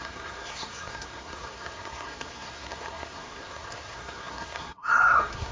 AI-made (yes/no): yes